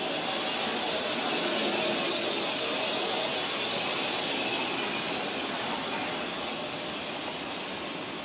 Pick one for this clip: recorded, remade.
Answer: recorded